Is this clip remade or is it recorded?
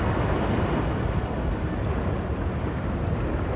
recorded